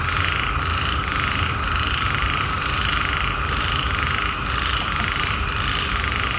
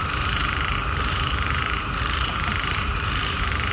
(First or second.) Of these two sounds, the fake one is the second